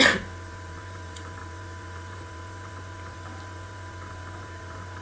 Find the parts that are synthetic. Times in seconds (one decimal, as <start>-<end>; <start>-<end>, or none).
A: 0.0-5.0